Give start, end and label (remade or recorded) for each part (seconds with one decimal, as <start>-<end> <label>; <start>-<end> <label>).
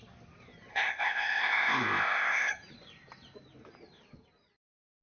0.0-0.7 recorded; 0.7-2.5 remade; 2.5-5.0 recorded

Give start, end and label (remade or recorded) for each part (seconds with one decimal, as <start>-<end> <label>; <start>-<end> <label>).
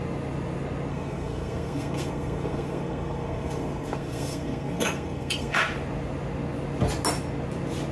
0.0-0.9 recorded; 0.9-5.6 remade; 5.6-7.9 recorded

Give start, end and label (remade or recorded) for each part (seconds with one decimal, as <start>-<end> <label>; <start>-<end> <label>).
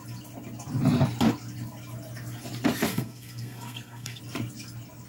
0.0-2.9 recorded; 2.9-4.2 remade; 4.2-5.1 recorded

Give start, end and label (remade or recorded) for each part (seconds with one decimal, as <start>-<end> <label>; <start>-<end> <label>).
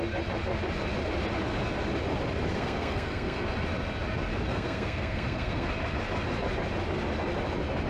0.0-2.5 recorded; 2.5-3.4 remade; 3.4-4.5 recorded; 4.5-5.7 remade; 5.7-7.9 recorded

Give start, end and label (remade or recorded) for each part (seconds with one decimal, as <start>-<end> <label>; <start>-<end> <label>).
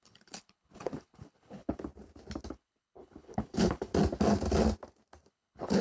0.0-1.9 remade; 1.9-2.5 recorded; 2.5-3.9 remade; 3.9-5.3 recorded; 5.3-5.8 remade